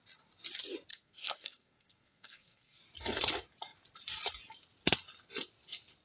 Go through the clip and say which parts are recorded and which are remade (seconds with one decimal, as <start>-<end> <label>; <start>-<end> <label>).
0.0-0.9 recorded; 0.9-2.8 remade; 2.8-6.0 recorded